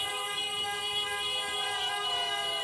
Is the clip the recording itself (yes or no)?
no